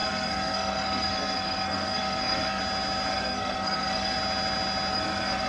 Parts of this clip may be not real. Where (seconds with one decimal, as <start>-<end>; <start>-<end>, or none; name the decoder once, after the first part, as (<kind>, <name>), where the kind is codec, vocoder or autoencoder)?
0.0-2.6 (codec, SNAC); 3.1-4.2; 4.9-5.5